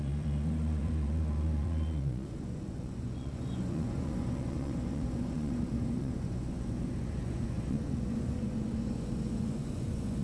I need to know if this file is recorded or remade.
remade